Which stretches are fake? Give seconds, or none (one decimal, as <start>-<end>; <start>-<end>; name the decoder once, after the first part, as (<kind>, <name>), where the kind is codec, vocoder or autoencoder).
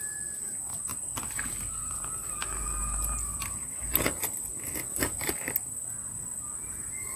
0.9-1.4 (vocoder, BigVGAN v2); 1.8-2.3